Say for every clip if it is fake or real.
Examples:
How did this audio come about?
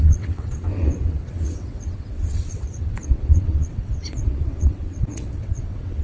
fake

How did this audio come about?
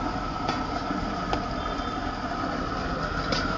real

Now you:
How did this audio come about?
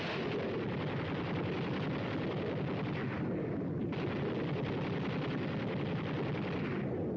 real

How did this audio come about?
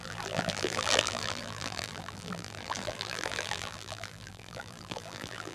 fake